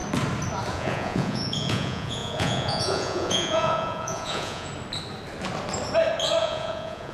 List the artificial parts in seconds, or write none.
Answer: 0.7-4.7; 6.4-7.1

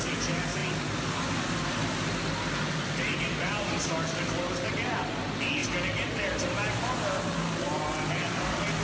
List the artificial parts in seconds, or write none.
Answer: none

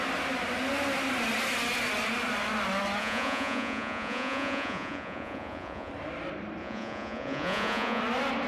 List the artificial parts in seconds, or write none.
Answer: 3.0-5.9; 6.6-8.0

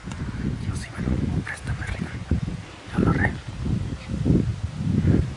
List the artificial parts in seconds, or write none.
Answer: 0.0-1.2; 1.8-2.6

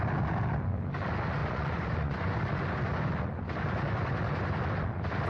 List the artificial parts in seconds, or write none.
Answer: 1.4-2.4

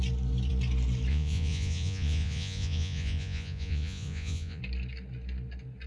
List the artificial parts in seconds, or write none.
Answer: 1.1-4.6